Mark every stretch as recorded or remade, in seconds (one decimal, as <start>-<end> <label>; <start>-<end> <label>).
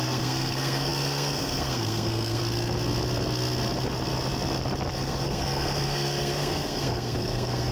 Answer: 0.0-2.4 remade; 2.4-5.0 recorded; 5.0-7.7 remade